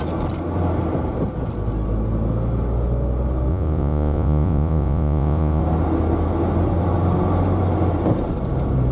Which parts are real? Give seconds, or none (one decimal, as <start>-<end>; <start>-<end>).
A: 0.0-3.5; 5.6-8.9

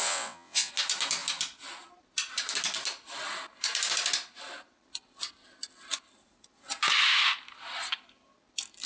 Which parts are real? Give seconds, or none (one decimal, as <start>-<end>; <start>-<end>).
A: 0.7-8.9

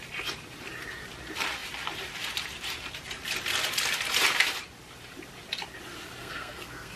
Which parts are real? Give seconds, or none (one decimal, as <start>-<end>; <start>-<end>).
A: 0.0-6.2

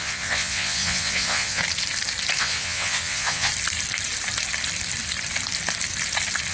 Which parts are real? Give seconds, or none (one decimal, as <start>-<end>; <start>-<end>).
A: 1.6-2.4; 3.5-6.5

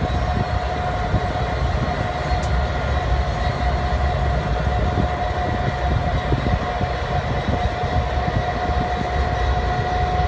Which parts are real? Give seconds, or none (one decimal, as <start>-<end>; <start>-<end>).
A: 0.0-6.0; 6.6-10.3

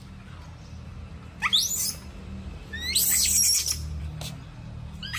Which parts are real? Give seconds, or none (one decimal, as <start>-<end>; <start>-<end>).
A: 0.0-5.2

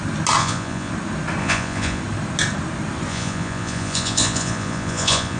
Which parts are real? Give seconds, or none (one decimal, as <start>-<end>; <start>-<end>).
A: 0.0-0.4; 0.9-1.4; 2.0-3.1

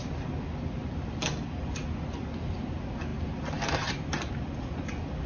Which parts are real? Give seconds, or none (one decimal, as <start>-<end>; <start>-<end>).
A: 0.0-5.3